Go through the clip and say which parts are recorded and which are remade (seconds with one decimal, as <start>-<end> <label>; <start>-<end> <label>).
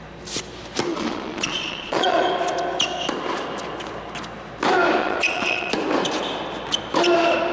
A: 0.0-0.9 recorded; 0.9-2.2 remade; 2.2-5.0 recorded; 5.0-5.7 remade; 5.7-7.5 recorded